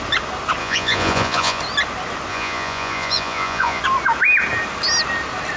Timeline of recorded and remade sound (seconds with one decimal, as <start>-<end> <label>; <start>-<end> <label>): 0.0-0.6 recorded; 0.6-1.6 remade; 1.6-2.3 recorded; 2.3-3.8 remade; 3.8-5.6 recorded